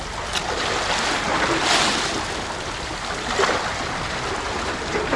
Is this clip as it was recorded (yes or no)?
yes